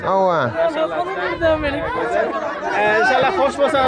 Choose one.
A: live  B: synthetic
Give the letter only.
A